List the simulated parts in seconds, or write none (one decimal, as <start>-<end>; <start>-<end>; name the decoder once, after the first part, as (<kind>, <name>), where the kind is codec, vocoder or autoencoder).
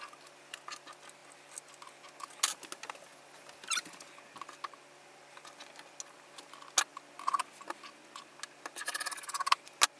none